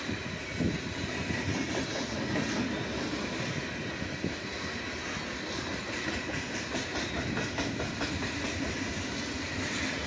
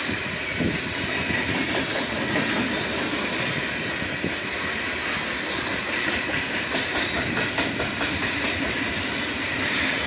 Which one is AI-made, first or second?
second